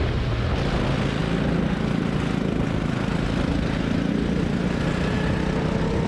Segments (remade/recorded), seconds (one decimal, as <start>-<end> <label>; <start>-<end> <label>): 0.0-6.1 recorded